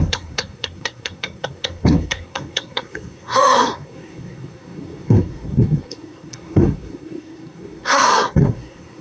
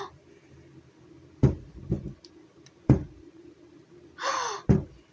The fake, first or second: first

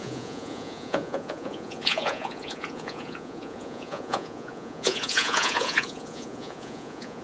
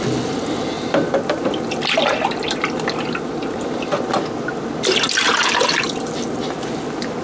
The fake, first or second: first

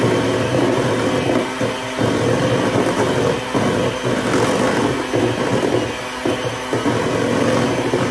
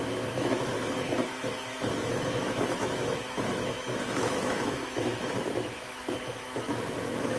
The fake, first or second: second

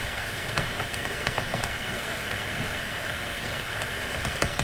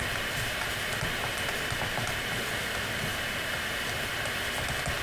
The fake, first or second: first